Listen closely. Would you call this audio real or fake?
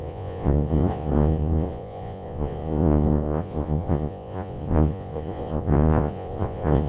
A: fake